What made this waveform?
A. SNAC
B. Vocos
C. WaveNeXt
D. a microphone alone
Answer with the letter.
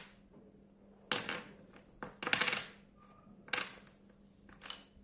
D